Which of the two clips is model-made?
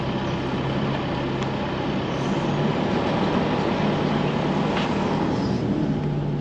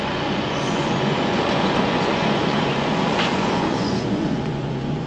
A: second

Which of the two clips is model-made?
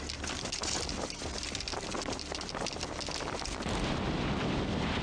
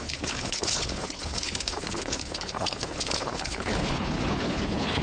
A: second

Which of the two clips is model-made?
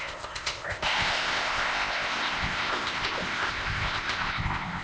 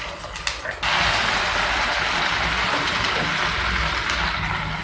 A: first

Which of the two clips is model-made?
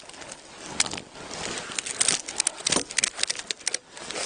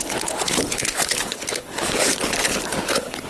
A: second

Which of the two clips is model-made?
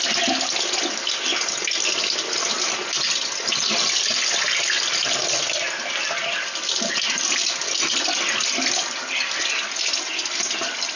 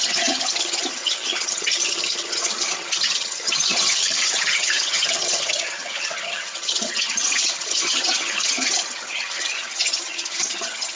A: second